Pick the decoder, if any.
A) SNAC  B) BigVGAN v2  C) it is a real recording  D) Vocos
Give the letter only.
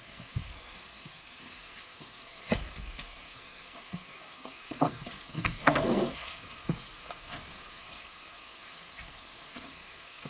A